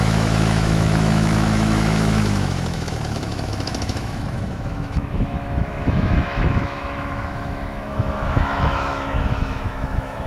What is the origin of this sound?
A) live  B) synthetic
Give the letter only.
B